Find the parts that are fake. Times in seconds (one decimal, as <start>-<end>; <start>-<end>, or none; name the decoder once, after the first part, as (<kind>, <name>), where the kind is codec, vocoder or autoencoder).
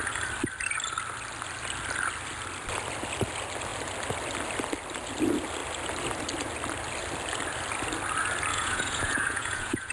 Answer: 8.5-9.9 (vocoder, Vocos)